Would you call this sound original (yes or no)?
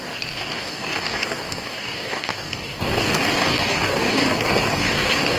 no